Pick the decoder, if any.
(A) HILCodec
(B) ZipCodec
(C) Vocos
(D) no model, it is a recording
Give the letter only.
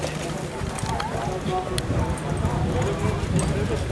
D